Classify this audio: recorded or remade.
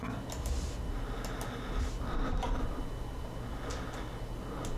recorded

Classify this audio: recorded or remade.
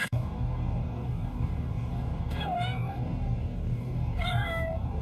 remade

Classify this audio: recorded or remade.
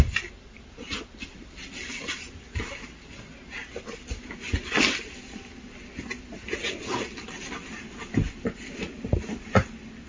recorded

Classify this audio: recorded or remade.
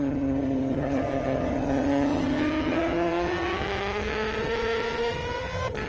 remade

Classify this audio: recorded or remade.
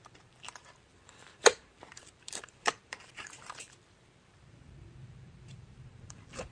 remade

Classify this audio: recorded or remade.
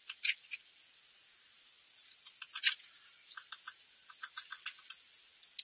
remade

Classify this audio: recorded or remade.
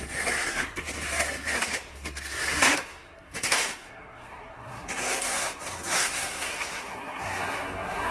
remade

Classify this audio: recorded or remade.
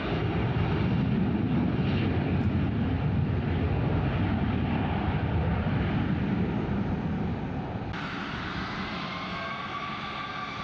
recorded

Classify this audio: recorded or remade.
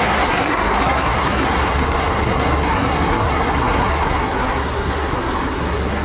remade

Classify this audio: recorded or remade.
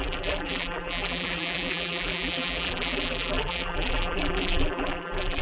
remade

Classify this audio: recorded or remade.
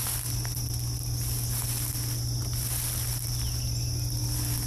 recorded